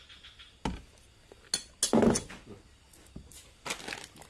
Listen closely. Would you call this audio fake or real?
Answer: real